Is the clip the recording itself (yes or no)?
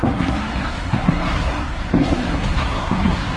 no